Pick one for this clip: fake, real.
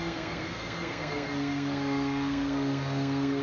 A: fake